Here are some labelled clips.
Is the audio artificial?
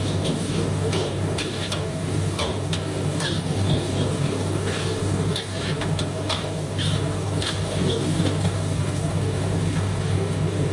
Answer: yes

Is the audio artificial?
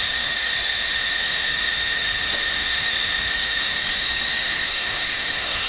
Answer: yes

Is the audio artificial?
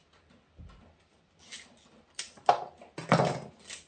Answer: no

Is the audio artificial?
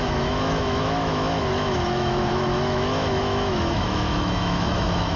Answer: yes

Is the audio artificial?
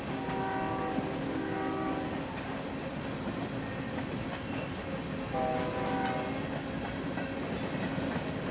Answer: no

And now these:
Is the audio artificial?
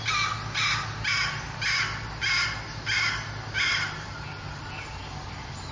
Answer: no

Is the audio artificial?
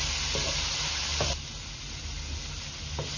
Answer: no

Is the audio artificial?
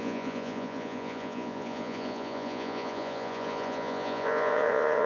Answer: yes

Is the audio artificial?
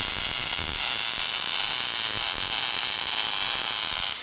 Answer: no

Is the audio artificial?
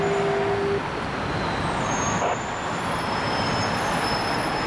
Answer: no